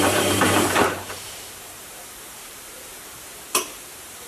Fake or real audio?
fake